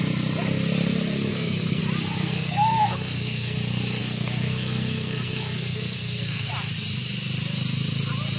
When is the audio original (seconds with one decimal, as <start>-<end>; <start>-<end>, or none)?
0.0-1.3; 1.8-2.2; 3.6-4.0; 6.5-8.4